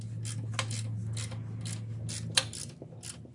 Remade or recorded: recorded